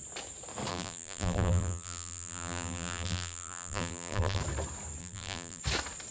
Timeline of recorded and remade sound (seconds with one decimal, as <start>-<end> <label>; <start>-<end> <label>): 0.0-0.7 recorded; 0.7-4.4 remade; 4.4-5.0 recorded; 5.0-5.6 remade; 5.6-6.1 recorded